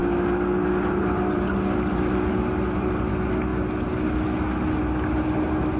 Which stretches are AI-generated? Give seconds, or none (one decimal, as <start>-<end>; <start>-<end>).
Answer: none